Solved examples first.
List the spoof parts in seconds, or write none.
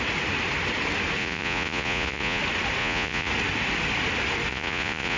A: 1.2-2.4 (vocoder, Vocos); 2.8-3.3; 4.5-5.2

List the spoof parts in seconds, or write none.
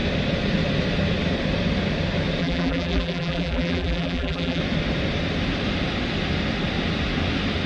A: 2.4-4.6 (vocoder, BigVGAN v2)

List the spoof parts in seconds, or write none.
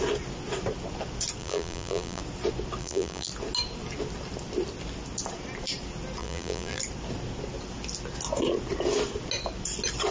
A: 1.4-2.2 (vocoder, BigVGAN v2); 2.8-3.3; 6.2-6.8